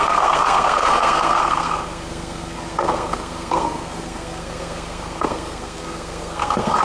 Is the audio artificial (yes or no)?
yes